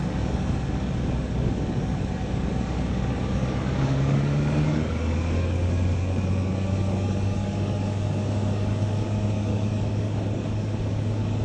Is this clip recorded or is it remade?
remade